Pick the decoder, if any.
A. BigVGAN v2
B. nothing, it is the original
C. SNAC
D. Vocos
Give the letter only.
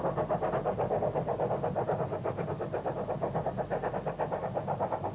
B